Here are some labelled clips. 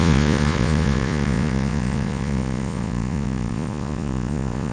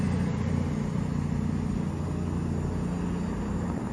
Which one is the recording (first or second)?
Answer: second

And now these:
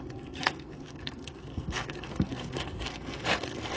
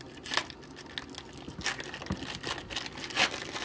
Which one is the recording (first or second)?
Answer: second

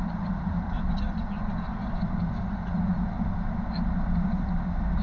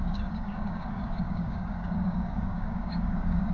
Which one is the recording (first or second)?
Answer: first